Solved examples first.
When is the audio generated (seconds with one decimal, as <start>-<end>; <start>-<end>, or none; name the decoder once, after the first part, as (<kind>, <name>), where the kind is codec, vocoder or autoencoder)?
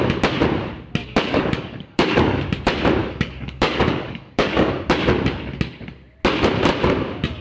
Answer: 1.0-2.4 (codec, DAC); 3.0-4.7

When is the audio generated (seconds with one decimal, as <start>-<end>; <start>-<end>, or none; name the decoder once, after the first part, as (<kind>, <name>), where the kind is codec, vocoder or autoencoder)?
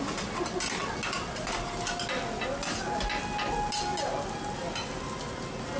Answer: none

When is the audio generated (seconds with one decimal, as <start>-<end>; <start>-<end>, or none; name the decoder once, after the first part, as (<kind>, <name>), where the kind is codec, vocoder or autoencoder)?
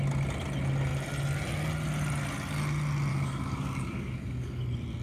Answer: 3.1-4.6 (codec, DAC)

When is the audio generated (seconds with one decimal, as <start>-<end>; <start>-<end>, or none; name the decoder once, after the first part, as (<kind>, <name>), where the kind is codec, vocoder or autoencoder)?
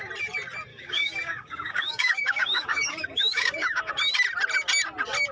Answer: 0.7-3.9 (codec, DAC)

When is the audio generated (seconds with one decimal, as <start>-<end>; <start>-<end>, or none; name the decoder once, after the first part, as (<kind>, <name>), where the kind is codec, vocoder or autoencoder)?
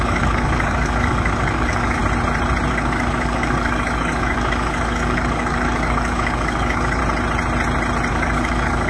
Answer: 0.0-2.0 (codec, DAC); 2.7-7.0; 8.1-8.9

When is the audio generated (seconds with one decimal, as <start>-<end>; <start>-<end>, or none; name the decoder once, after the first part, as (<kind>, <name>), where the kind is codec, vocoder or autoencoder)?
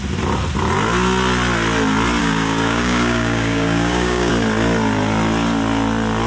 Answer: 2.2-4.3 (codec, DAC)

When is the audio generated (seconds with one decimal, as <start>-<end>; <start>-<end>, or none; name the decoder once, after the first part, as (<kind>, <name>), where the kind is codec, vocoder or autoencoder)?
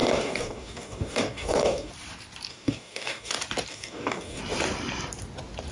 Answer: 0.0-1.9 (codec, DAC); 2.5-3.3; 3.7-4.4